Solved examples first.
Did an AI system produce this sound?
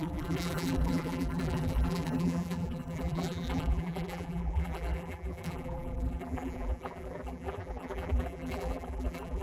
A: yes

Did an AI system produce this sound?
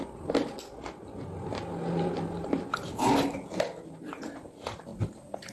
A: no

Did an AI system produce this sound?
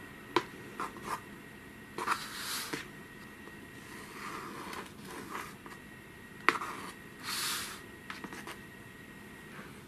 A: no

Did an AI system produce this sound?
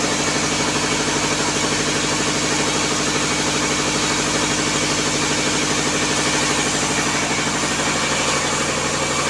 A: no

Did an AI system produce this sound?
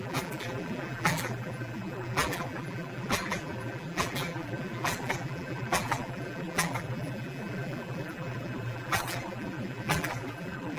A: yes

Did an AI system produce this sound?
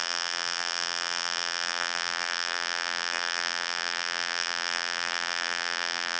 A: yes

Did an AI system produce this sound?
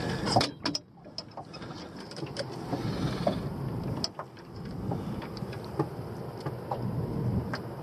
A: no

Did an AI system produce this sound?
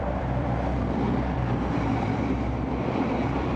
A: yes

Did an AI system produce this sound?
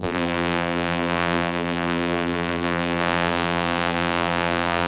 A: yes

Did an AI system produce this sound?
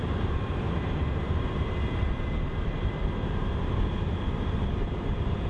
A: yes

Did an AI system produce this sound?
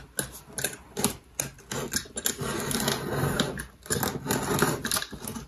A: no